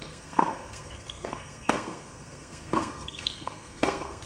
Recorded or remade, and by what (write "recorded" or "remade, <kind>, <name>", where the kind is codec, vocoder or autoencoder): remade, codec, SNAC